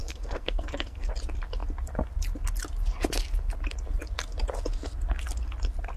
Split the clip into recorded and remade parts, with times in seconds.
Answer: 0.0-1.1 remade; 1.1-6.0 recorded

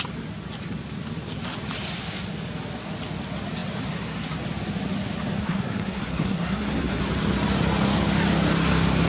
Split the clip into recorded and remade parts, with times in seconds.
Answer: 0.0-5.4 recorded; 5.4-7.0 remade; 7.0-9.1 recorded

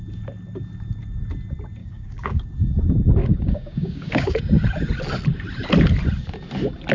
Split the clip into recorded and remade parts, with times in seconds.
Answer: 0.0-1.8 recorded; 1.8-2.4 remade; 2.4-3.2 recorded; 3.2-4.4 remade; 4.4-6.9 recorded

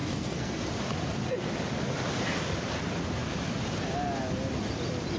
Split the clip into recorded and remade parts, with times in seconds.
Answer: 0.0-0.6 remade; 0.6-5.2 recorded